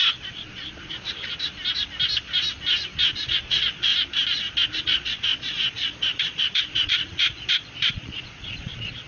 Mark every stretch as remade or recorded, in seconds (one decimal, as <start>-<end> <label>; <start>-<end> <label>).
0.0-1.3 remade; 1.3-3.2 recorded; 3.2-3.9 remade; 3.9-4.8 recorded; 4.8-9.1 remade